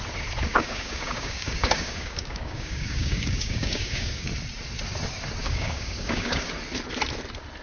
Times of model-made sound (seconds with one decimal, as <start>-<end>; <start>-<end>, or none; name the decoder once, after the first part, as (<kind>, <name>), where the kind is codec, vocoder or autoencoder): 0.5-4.3 (codec, DAC); 5.4-6.5